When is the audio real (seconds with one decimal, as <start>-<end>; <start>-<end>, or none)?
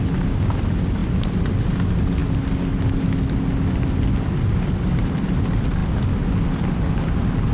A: 0.0-7.5